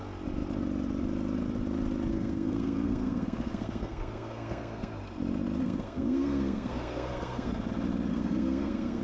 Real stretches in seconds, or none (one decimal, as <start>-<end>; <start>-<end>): 0.0-2.1; 5.0-5.6; 7.6-8.1